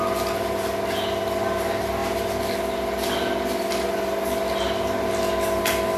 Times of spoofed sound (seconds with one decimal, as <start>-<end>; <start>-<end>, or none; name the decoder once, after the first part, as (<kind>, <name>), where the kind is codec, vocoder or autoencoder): none